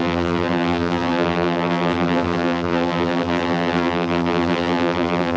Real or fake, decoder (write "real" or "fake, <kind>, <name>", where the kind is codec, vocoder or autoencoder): fake, vocoder, BigVGAN v2